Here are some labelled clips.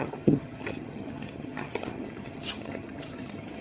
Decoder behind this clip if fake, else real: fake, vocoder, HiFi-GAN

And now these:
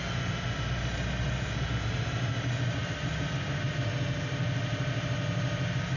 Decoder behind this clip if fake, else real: real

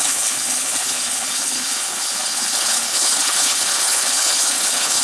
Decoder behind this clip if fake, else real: fake, codec, HILCodec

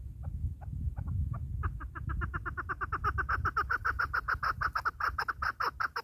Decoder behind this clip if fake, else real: real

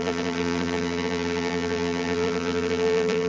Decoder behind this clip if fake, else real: fake, vocoder, BigVGAN v2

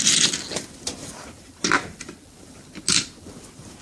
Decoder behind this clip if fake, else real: real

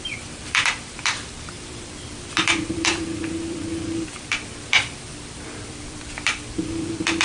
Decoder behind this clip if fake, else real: fake, vocoder, BigVGAN v2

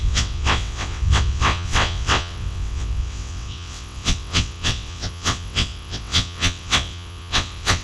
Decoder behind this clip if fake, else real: fake, vocoder, WaveNeXt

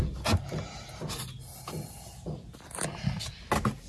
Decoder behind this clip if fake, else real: real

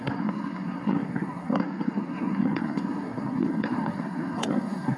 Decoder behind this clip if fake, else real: fake, codec, SNAC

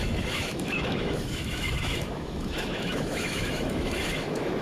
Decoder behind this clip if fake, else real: fake, autoencoder, DAC-VAE